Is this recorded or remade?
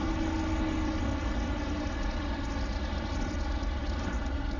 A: recorded